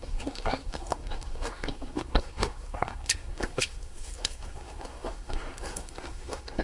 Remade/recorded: remade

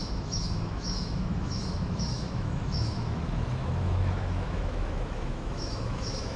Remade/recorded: remade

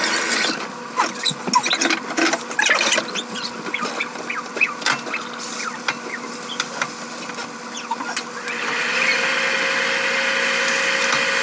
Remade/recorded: recorded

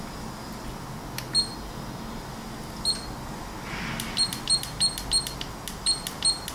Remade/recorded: recorded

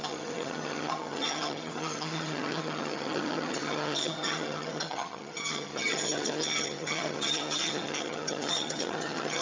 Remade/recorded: remade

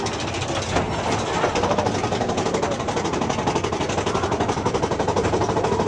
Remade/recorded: recorded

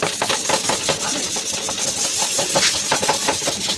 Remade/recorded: recorded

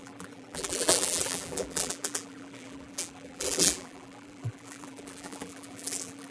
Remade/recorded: remade